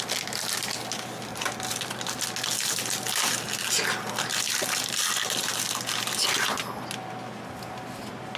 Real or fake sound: real